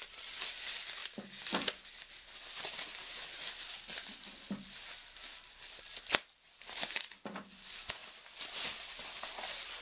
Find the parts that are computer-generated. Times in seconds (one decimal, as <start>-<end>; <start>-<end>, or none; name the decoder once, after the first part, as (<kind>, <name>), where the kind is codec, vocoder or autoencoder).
8.0-8.8 (vocoder, BigVGAN v2)